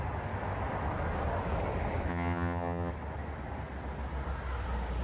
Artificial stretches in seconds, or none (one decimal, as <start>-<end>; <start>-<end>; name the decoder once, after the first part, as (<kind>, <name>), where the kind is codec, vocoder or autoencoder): 2.1-2.9 (vocoder, HiFi-GAN)